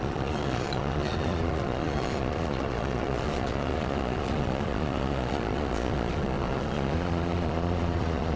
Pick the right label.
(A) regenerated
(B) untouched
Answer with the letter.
A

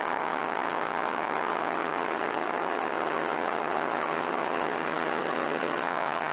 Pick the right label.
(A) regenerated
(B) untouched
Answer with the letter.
A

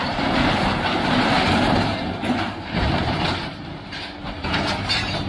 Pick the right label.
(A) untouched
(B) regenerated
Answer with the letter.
B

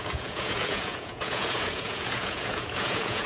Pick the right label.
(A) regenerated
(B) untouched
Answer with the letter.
A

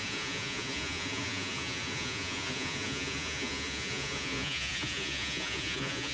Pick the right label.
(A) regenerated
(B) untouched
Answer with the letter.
A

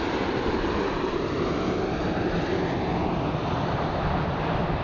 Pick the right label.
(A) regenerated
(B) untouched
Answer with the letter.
B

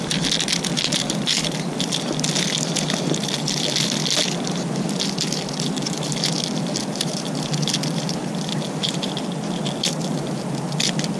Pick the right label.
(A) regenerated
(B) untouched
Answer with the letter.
B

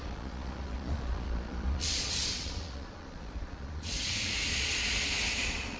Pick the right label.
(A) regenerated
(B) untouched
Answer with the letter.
A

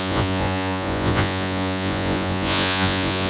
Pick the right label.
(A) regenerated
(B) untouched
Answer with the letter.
A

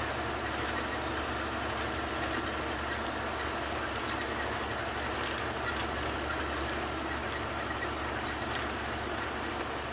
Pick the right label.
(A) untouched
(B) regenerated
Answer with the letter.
A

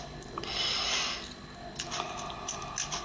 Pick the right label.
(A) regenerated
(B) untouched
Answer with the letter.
B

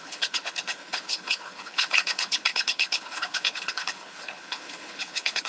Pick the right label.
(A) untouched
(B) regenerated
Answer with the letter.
B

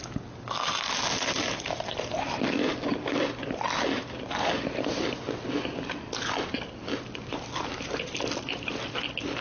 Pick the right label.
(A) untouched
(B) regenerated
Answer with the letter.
A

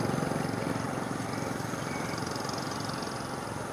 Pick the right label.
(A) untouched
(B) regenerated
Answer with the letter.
A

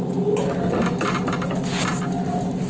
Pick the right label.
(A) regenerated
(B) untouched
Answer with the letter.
B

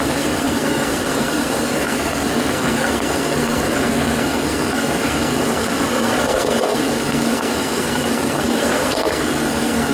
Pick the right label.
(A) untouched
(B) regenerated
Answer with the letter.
B